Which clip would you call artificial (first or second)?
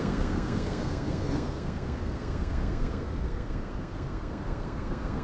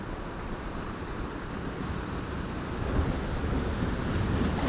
first